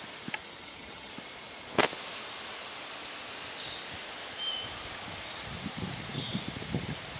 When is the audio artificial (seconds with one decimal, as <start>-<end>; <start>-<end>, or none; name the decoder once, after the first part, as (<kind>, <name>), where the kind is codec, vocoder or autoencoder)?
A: 0.4-1.1 (vocoder, HiFi-GAN)